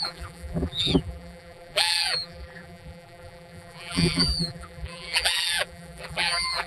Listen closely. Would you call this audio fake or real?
fake